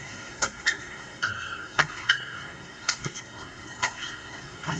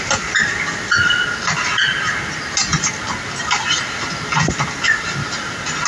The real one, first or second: second